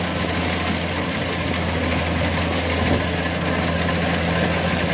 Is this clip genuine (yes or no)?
yes